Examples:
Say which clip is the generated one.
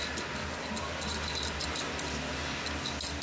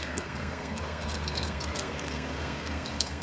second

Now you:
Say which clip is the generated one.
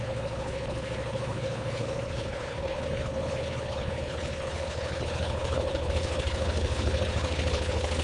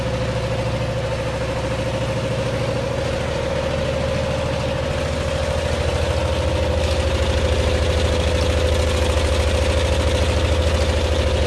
first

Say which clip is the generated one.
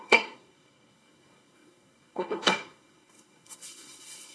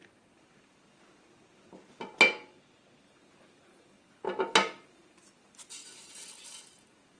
first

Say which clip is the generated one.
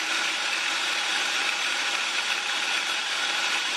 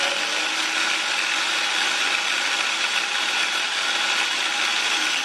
first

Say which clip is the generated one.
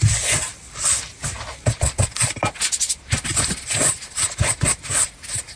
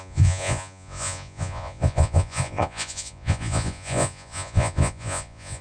second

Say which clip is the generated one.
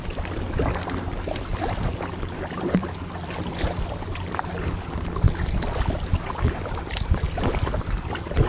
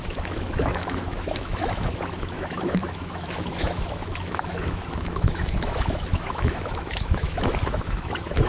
second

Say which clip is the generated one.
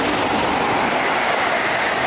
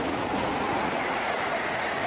second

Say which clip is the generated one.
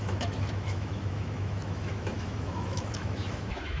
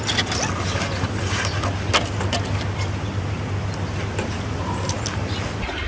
first